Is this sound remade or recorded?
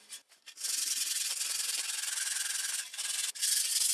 recorded